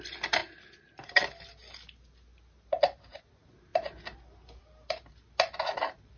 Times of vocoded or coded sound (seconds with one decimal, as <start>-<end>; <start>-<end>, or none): none